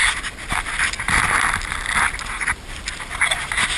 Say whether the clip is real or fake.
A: real